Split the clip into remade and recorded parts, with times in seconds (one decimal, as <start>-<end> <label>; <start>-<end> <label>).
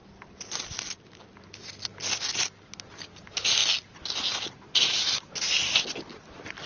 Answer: 0.0-0.7 recorded; 0.7-1.9 remade; 1.9-2.9 recorded; 2.9-3.6 remade; 3.6-6.0 recorded; 6.0-6.7 remade